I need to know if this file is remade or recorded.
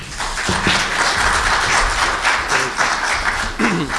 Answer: recorded